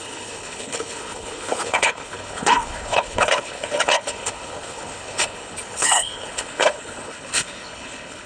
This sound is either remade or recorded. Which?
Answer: remade